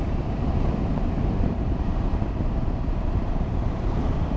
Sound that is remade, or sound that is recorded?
remade